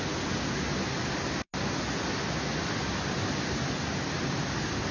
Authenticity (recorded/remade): recorded